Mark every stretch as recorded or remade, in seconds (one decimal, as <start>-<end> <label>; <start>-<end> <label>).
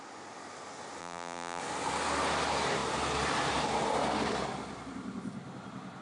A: 0.0-1.0 recorded; 1.0-1.6 remade; 1.6-6.0 recorded